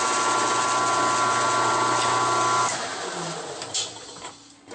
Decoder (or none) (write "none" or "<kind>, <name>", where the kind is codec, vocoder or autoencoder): none